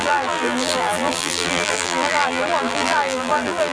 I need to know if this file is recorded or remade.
remade